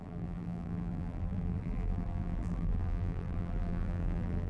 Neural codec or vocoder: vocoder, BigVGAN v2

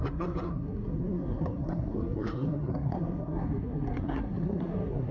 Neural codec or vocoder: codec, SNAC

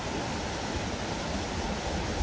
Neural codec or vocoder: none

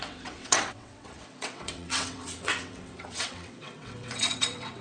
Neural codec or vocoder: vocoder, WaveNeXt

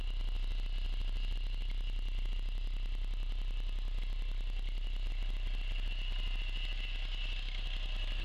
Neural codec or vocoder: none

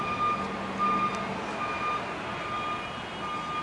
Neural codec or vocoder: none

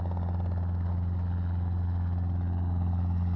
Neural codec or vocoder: none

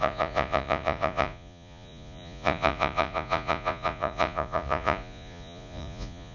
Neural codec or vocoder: vocoder, Vocos